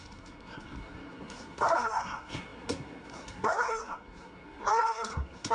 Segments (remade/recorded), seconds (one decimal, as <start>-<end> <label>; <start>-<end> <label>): 0.0-5.5 remade